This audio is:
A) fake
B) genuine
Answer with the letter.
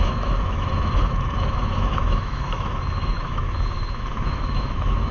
A